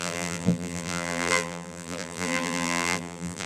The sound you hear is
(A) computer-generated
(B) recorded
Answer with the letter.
A